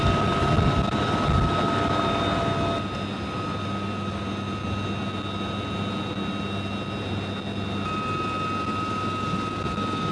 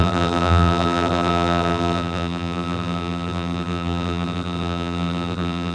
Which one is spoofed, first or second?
second